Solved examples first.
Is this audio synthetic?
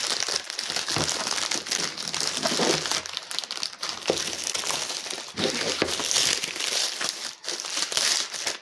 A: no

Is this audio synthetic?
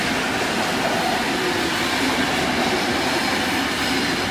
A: no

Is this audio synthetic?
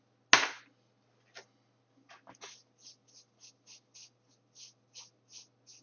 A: no